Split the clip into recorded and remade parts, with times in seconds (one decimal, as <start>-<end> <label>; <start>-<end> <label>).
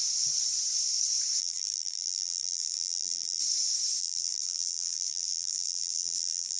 0.0-1.4 recorded; 1.4-3.4 remade; 3.4-4.0 recorded; 4.0-6.6 remade